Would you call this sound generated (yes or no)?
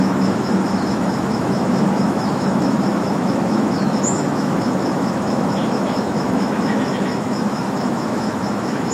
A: yes